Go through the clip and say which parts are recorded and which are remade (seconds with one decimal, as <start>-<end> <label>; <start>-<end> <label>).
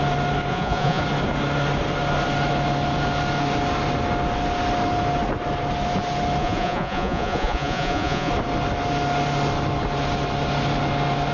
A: 0.0-0.5 recorded; 0.5-1.0 remade; 1.0-6.4 recorded; 6.4-8.3 remade; 8.3-11.3 recorded